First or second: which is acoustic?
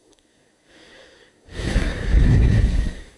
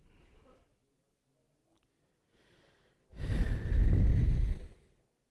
second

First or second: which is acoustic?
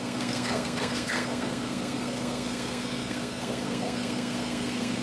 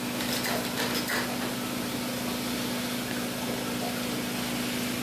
second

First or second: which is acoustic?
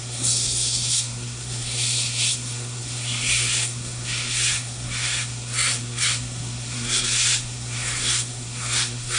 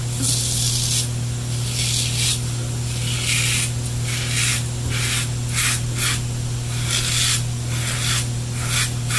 second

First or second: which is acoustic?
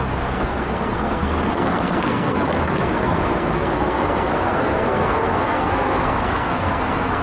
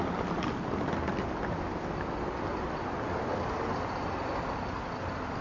second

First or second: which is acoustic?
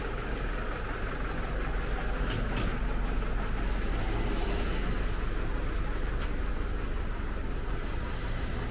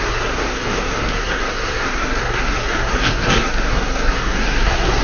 first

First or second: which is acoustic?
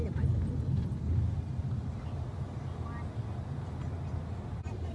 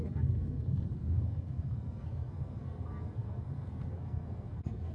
first